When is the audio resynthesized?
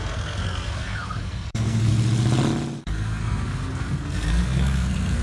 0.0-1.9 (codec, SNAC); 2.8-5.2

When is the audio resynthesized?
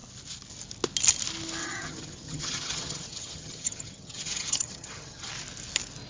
1.6-5.3 (vocoder, HiFi-GAN)